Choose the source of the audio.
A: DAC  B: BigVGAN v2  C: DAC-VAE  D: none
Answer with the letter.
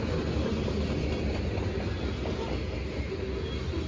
D